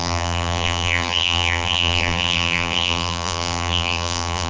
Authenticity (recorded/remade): remade